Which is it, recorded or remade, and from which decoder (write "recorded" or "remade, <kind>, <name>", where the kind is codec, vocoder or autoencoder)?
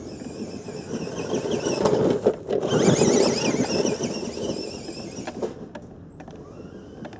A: recorded